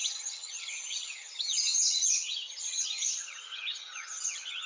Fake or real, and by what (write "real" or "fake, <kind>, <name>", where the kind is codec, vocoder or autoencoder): fake, vocoder, HiFi-GAN